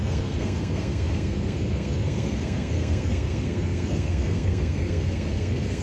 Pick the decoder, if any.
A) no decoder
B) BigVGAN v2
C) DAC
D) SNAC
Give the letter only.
D